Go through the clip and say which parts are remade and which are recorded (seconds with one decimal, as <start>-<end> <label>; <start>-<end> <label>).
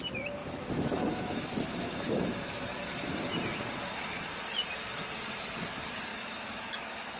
0.0-0.4 recorded; 0.4-3.1 remade; 3.1-6.1 recorded; 6.1-7.2 remade